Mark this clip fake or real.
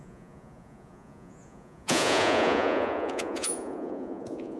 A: fake